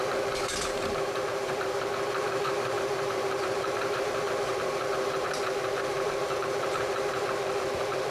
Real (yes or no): no